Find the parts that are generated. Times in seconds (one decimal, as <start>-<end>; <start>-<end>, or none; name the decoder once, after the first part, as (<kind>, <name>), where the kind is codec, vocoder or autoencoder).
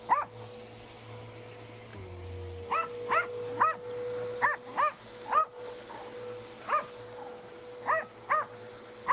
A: none